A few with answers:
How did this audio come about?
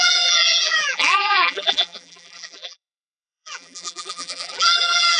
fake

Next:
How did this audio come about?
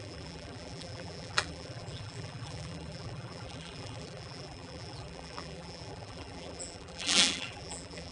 fake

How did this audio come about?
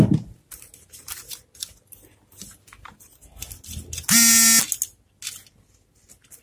real